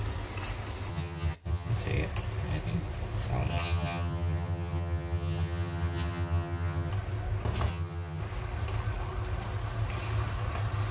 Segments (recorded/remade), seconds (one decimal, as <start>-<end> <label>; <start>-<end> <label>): 0.0-0.9 recorded; 0.9-1.7 remade; 1.7-3.5 recorded; 3.5-6.9 remade; 6.9-7.7 recorded; 7.7-8.2 remade; 8.2-10.9 recorded